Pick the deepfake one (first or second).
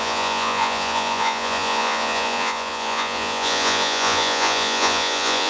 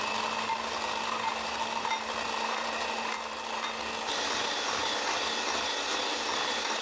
first